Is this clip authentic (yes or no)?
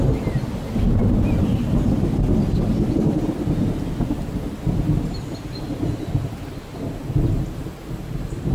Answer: yes